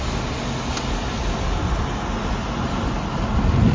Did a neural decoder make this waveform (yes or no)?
no